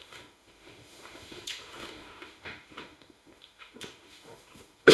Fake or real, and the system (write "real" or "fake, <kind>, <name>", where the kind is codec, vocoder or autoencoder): fake, autoencoder, DAC-VAE